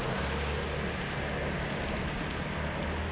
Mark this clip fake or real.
real